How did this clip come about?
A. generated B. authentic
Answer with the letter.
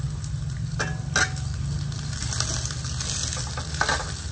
B